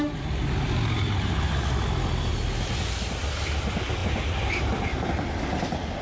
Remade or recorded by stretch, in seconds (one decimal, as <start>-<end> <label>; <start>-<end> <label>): 0.0-6.0 recorded